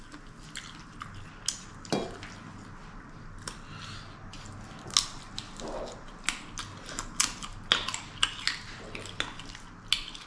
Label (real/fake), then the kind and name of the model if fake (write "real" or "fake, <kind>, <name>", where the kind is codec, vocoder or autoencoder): real